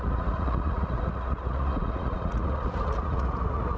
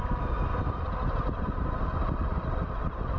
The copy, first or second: first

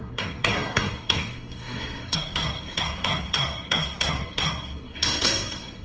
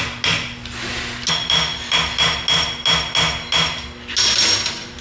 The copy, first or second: first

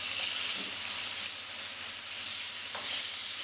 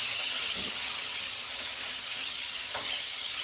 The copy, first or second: second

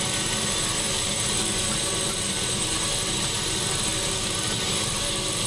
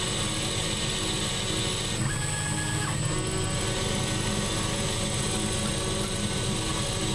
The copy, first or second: first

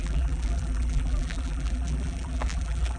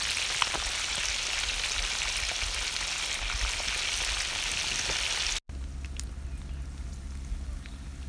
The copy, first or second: first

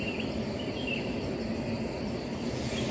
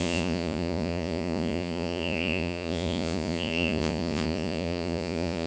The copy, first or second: second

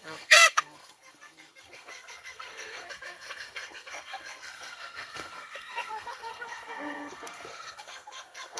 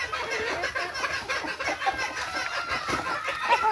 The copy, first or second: first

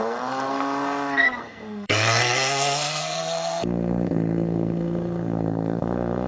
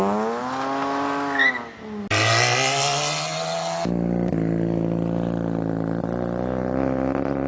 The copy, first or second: first